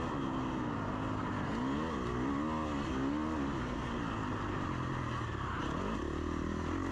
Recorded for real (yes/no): yes